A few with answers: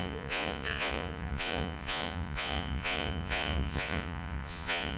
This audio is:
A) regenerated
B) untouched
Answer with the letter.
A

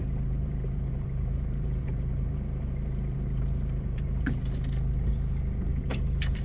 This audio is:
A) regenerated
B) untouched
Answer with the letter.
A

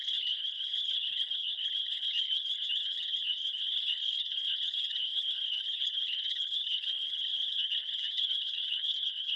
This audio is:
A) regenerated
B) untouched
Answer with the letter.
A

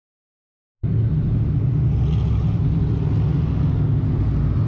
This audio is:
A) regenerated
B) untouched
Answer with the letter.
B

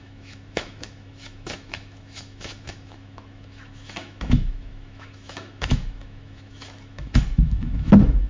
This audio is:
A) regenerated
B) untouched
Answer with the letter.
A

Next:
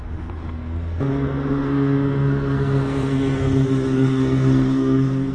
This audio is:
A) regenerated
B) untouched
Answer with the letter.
A